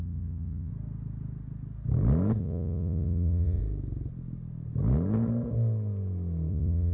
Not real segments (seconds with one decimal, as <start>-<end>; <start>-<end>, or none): 0.0-0.7; 2.4-3.6; 6.5-6.9